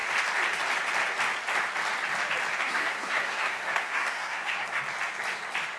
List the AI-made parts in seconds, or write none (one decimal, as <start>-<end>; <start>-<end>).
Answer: 2.6-4.8